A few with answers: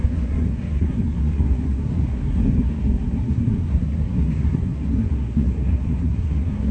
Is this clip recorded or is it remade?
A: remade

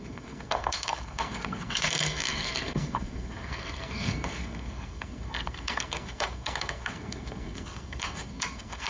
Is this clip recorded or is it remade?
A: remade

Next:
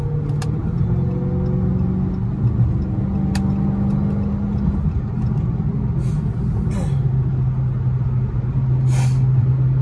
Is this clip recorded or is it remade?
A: recorded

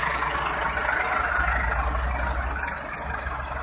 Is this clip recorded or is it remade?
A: recorded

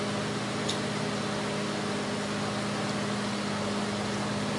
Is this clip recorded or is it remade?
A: recorded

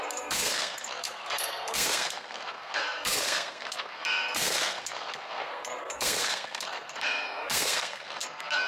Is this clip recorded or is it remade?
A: remade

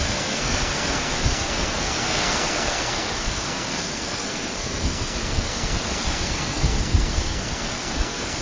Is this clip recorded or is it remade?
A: remade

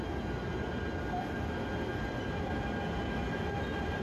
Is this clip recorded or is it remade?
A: recorded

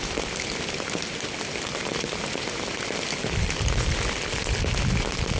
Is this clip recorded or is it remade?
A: recorded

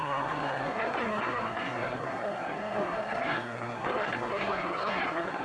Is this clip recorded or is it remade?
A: remade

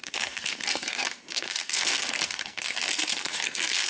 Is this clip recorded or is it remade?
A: remade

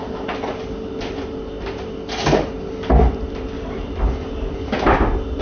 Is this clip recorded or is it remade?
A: recorded